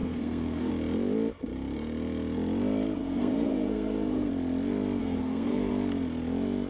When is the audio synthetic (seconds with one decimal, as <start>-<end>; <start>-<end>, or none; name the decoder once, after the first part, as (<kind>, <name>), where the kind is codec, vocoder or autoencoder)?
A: 0.0-0.7 (codec, SNAC); 3.0-4.3; 5.0-5.7